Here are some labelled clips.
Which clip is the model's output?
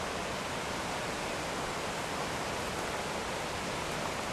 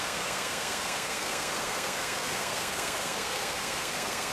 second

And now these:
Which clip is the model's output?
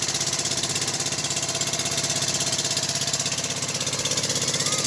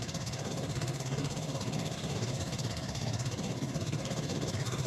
second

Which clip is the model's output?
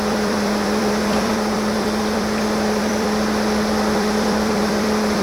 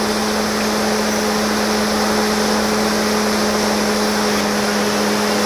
first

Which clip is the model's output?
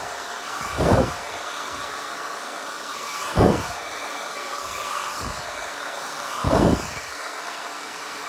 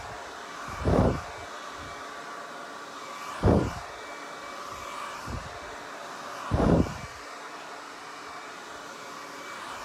first